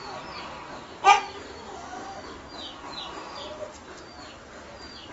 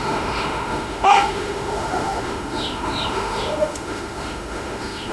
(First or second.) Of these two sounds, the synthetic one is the second